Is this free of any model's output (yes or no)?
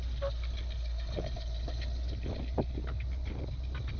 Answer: yes